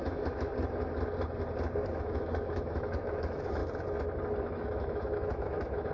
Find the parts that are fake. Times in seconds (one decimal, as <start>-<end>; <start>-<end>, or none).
0.0-0.5; 1.9-3.6; 4.4-5.9